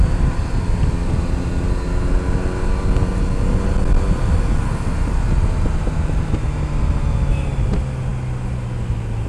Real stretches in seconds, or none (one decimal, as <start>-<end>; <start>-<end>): 0.0-9.3

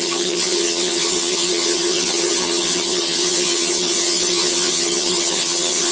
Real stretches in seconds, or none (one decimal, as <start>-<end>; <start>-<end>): none

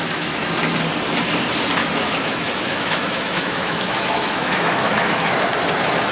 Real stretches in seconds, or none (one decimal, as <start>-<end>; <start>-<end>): 0.5-1.8; 5.5-6.1

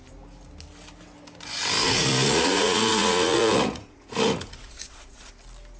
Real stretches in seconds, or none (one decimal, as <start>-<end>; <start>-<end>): 0.0-1.8; 5.3-5.8

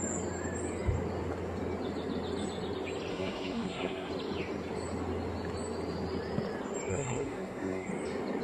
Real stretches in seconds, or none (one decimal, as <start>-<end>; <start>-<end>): 0.0-3.1; 4.1-6.9; 7.9-8.4

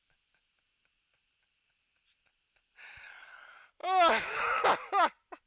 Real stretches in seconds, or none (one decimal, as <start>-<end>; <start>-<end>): 0.0-3.8; 4.4-5.5

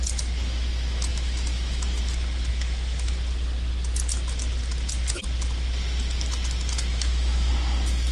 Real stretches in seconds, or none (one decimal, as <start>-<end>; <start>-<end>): 0.0-1.1; 2.0-2.5; 3.1-6.9; 7.5-8.1